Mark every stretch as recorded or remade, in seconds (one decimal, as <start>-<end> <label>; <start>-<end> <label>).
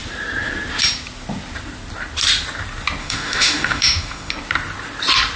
0.0-3.0 recorded; 3.0-4.3 remade; 4.3-5.4 recorded